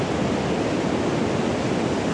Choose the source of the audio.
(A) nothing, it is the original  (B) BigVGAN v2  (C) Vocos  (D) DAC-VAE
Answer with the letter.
A